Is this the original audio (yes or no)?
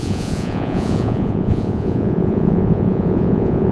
no